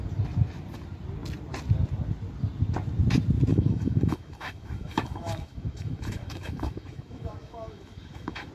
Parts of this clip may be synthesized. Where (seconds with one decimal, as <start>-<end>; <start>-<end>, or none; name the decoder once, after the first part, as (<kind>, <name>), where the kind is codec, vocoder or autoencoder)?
3.5-8.5 (autoencoder, DAC-VAE)